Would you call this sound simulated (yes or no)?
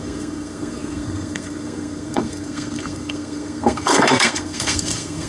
yes